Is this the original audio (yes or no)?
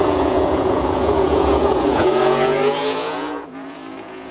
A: no